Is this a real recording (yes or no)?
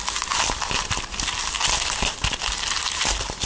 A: yes